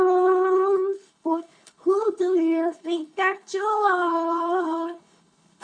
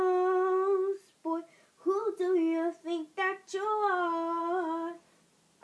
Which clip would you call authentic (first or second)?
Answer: second